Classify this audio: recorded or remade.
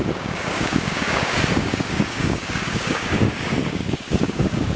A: remade